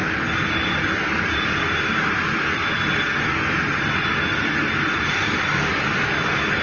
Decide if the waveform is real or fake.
real